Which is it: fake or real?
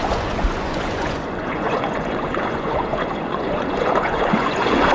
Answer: fake